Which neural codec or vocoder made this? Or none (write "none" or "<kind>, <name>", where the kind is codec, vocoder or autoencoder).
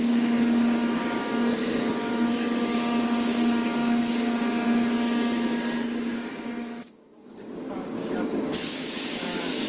codec, DAC